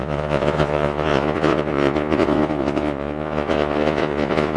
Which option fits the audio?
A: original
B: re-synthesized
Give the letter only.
B